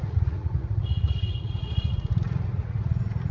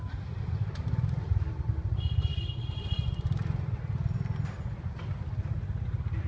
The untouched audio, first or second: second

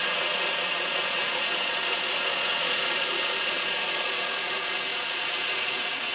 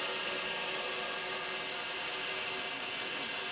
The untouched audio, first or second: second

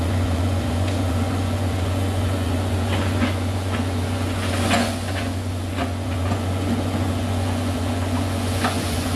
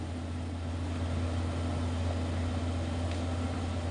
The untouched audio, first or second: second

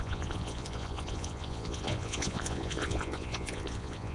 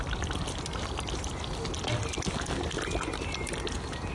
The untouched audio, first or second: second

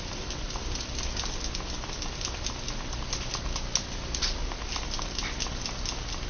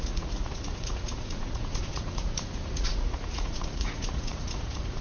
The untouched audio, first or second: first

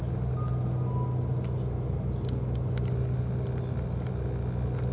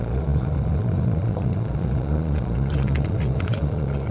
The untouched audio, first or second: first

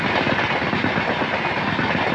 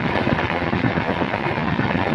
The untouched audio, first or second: first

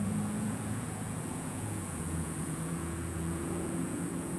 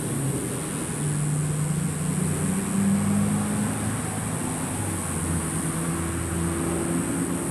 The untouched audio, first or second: second